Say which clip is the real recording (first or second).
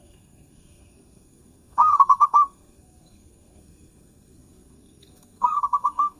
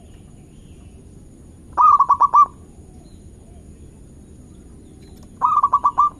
second